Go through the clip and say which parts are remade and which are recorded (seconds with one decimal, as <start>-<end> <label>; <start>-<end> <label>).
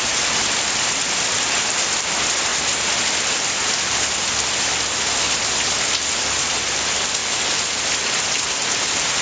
0.0-9.2 recorded